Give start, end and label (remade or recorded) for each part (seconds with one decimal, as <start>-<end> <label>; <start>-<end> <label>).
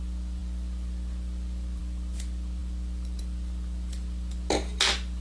0.0-5.2 recorded